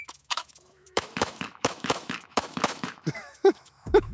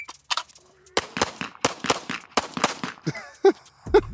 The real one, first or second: second